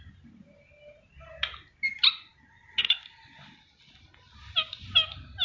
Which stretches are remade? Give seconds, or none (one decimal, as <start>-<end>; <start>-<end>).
none

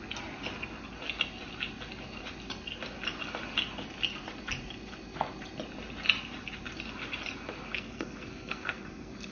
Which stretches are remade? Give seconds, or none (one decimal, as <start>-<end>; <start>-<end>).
7.7-9.3

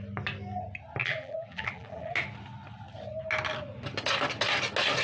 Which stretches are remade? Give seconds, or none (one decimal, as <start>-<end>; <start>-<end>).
1.0-2.1

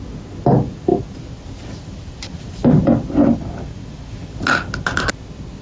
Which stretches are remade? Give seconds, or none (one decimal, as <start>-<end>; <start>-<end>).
none

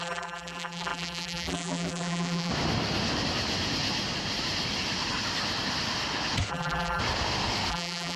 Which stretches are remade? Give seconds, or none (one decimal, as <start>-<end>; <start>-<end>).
0.0-2.5; 6.5-7.0; 7.7-8.2